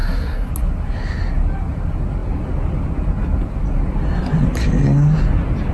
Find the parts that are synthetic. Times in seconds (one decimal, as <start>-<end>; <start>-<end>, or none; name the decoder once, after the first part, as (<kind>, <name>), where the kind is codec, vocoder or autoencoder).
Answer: 0.0-0.5 (codec, SNAC)